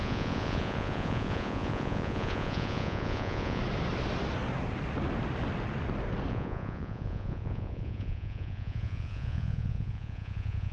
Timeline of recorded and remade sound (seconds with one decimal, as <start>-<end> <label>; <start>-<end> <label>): 0.0-3.6 remade; 3.6-6.3 recorded; 6.3-10.7 remade